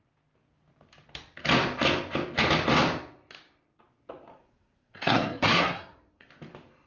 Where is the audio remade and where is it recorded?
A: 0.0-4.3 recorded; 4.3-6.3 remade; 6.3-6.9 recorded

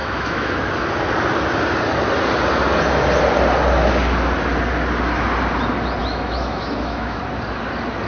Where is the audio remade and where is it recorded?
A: 0.0-0.7 remade; 0.7-6.0 recorded; 6.0-7.2 remade; 7.2-8.1 recorded

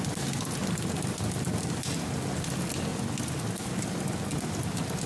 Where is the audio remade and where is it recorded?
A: 0.0-5.1 recorded

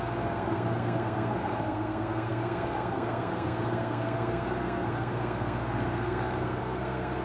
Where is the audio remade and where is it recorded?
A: 0.0-7.2 remade

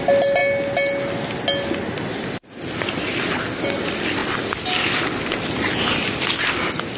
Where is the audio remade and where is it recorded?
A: 0.0-7.0 recorded